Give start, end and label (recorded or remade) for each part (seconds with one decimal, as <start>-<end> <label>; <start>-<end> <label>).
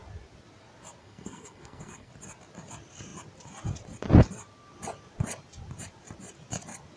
0.0-1.0 recorded; 1.0-2.1 remade; 2.1-7.0 recorded